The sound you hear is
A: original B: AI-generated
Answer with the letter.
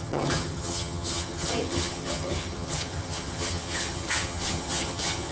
B